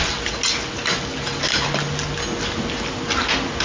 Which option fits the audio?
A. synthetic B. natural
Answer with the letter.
B